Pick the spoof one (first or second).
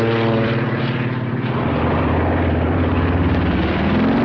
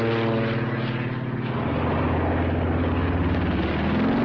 first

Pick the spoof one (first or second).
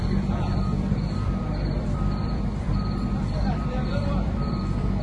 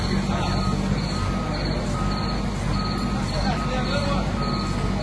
first